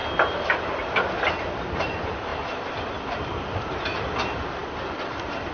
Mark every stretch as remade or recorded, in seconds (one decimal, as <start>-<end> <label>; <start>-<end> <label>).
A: 0.0-1.3 recorded; 1.3-4.6 remade; 4.6-5.1 recorded; 5.1-5.5 remade